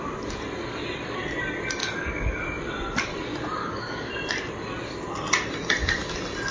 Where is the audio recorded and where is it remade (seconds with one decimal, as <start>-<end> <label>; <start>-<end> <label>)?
0.0-1.8 recorded; 1.8-2.4 remade; 2.4-3.6 recorded; 3.6-4.1 remade; 4.1-6.5 recorded